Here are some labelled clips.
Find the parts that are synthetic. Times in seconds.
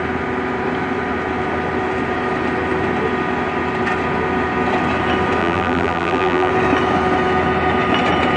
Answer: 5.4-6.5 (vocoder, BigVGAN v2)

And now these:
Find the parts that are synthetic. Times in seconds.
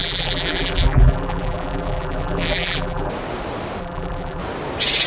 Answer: 0.0-3.1 (vocoder, BigVGAN v2); 3.8-4.4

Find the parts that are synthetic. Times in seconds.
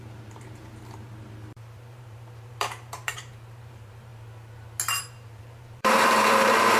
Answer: 0.0-4.1 (vocoder, BigVGAN v2); 5.0-6.8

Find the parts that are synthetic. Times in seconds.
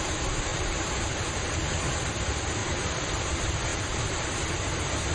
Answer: 0.5-1.9 (vocoder, BigVGAN v2); 2.6-3.2; 3.7-5.1